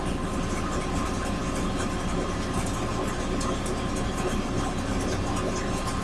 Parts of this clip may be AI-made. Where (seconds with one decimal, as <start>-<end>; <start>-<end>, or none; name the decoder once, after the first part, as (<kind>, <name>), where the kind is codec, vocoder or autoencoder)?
none